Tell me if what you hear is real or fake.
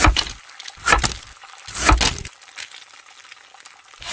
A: real